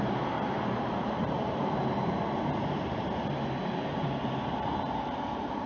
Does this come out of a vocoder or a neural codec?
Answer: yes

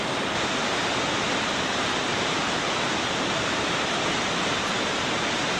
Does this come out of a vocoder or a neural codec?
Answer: yes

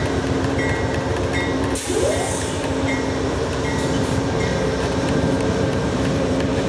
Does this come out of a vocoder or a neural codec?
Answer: yes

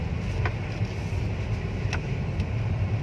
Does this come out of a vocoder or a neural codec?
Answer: no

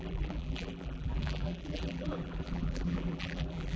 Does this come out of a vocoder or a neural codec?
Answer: yes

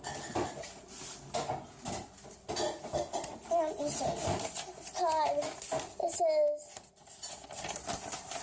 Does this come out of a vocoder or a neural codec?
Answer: no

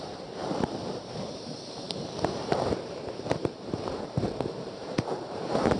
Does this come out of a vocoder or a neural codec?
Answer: yes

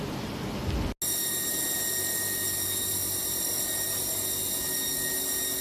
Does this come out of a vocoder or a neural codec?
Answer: no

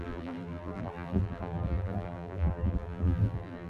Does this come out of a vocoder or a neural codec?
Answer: yes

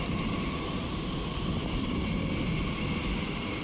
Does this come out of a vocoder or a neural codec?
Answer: yes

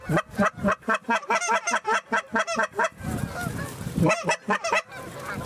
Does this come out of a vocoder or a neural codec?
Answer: no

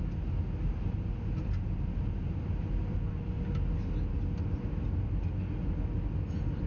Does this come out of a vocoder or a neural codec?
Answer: no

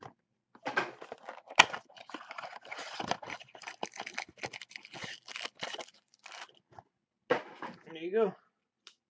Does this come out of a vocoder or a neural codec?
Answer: no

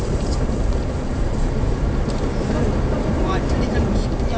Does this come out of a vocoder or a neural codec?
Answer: yes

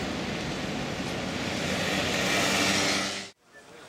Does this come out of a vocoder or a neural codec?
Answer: no